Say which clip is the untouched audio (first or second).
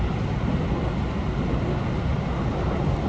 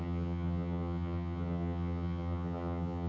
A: first